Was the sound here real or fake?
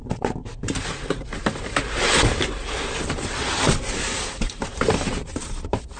fake